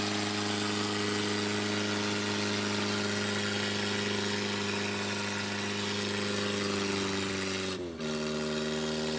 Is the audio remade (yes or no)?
no